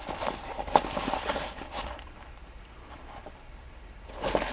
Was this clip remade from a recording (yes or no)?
no